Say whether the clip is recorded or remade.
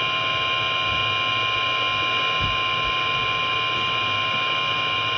recorded